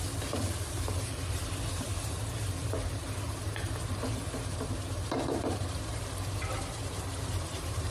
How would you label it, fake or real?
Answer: fake